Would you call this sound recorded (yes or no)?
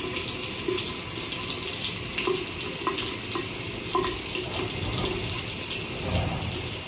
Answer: yes